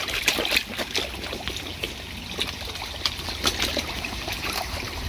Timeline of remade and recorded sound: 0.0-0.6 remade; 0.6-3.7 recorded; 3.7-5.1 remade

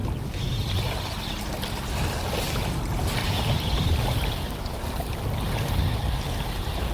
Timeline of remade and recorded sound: 0.0-3.2 recorded; 3.2-5.2 remade; 5.2-6.9 recorded

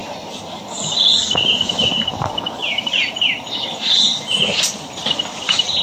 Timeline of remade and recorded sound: 0.0-2.6 recorded; 2.6-4.4 remade; 4.4-5.8 recorded

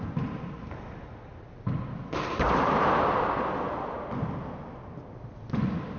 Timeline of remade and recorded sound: 0.0-6.0 recorded

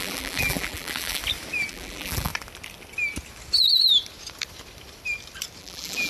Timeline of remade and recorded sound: 0.0-1.2 remade; 1.2-1.7 recorded; 1.7-2.3 remade; 2.3-5.6 recorded; 5.6-6.1 remade

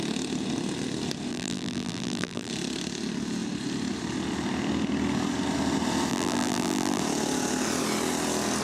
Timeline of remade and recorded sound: 0.0-1.3 recorded; 1.3-2.5 remade; 2.5-6.1 recorded; 6.1-7.0 remade; 7.0-8.6 recorded